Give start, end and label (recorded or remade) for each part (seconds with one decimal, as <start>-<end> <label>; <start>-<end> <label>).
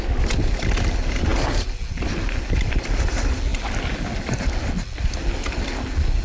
0.0-6.2 recorded